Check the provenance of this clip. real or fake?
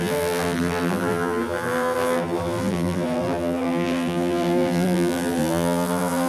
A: fake